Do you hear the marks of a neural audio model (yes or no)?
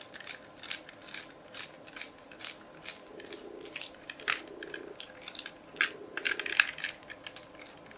no